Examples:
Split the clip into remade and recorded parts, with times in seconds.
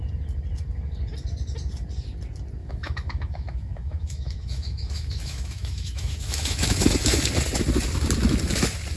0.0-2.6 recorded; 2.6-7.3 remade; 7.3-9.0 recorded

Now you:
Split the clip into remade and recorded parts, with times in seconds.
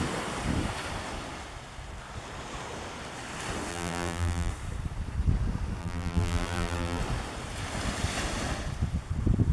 0.0-3.7 recorded; 3.7-4.5 remade; 4.5-5.8 recorded; 5.8-7.0 remade; 7.0-9.5 recorded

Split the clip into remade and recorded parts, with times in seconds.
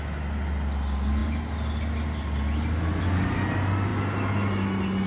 0.0-5.1 recorded